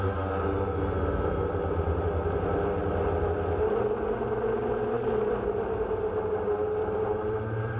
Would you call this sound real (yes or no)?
yes